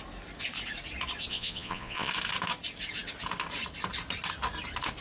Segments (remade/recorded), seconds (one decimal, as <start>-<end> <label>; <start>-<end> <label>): 0.0-1.3 recorded; 1.3-2.1 remade; 2.1-5.0 recorded